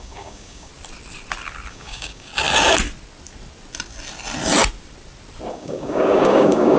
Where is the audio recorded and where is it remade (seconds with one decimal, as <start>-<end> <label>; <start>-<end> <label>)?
0.0-0.7 remade; 0.7-1.7 recorded; 1.7-2.3 remade; 2.3-5.5 recorded; 5.5-6.8 remade